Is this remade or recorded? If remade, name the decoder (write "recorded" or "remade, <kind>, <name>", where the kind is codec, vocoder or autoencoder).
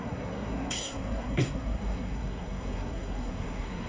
remade, codec, SNAC